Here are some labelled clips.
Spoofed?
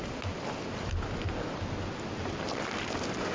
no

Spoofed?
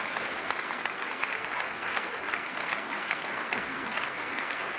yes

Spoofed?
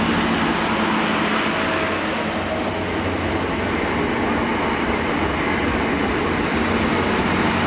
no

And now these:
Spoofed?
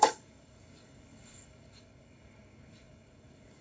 yes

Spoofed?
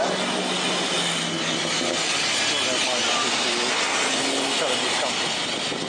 no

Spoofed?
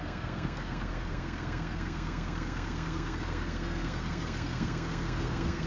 yes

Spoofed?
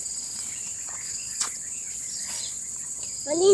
yes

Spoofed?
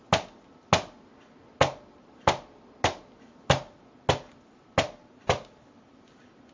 no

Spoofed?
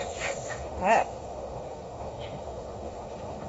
yes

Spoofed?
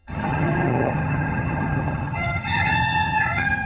yes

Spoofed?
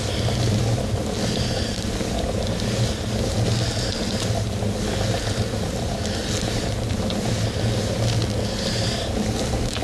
no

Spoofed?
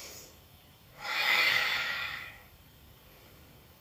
yes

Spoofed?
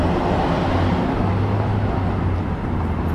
no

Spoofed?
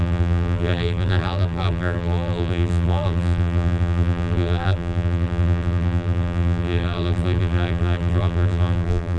yes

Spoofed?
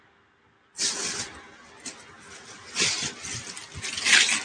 no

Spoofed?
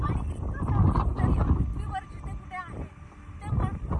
no